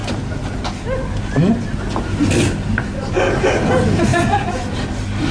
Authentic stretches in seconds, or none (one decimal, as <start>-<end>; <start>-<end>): 0.0-5.3